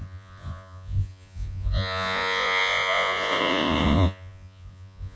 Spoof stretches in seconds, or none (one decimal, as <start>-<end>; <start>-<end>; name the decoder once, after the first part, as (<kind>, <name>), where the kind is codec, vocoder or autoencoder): 0.0-5.2 (vocoder, Vocos)